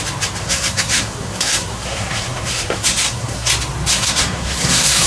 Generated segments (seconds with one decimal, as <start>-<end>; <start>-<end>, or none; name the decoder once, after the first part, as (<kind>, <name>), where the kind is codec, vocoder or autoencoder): 0.4-3.5 (codec, SNAC); 3.9-5.1